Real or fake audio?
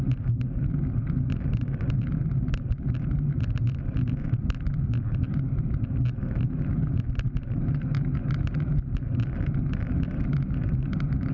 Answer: real